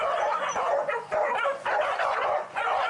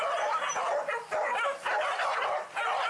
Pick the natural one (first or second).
second